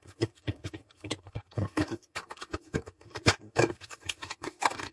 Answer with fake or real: fake